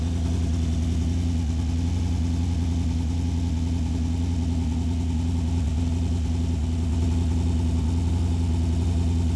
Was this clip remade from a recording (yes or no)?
no